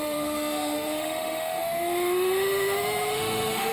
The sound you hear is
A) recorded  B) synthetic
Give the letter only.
B